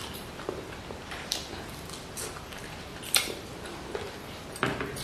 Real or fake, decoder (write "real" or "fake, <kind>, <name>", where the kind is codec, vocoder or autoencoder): fake, vocoder, BigVGAN v2